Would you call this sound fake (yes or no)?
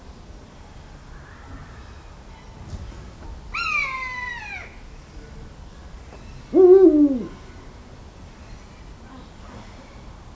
no